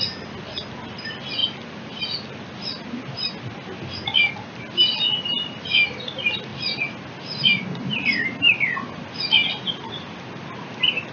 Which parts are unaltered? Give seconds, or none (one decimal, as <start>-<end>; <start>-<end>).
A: 0.0-11.1